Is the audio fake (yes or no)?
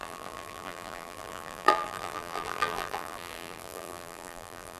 yes